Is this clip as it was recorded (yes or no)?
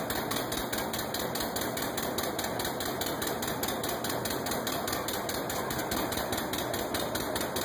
yes